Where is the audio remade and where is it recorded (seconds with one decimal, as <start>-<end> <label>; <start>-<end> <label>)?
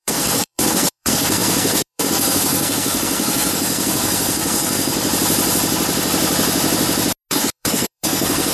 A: 0.0-4.9 remade; 4.9-7.3 recorded; 7.3-8.5 remade